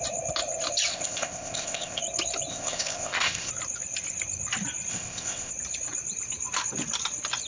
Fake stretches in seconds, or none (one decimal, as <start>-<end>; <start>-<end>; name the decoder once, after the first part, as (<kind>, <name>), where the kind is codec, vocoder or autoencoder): 0.9-2.0 (codec, ZipCodec); 2.5-3.5; 4.9-5.5